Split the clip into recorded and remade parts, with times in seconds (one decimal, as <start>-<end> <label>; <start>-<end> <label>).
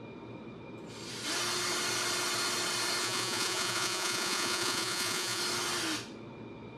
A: 0.0-3.0 recorded; 3.0-5.4 remade; 5.4-6.8 recorded